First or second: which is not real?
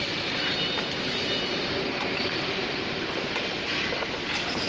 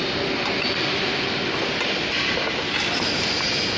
first